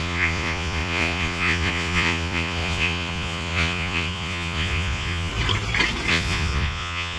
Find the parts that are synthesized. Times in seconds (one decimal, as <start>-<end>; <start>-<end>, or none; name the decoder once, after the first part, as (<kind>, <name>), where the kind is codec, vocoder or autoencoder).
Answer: 0.0-5.3 (vocoder, Vocos); 6.1-7.2